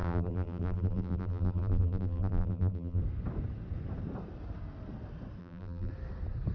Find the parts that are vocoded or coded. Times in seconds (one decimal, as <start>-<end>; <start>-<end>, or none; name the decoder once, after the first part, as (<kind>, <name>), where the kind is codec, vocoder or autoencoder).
0.0-3.0 (vocoder, BigVGAN v2); 5.4-5.9

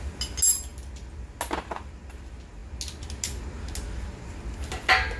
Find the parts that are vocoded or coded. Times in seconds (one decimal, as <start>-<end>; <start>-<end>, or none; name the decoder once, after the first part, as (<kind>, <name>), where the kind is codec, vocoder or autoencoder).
none

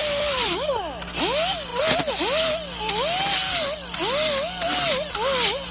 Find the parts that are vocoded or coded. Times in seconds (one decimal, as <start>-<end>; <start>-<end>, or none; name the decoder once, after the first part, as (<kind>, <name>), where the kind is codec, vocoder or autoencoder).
0.0-0.8 (vocoder, BigVGAN v2)